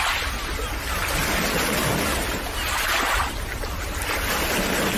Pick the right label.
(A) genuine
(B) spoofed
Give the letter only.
A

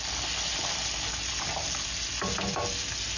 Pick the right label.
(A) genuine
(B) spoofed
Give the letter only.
A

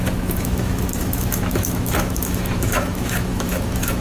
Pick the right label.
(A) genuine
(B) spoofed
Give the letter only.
B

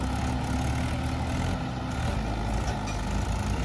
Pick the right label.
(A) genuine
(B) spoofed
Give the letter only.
A